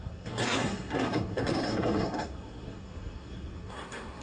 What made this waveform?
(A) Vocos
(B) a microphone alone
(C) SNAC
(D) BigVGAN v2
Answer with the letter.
C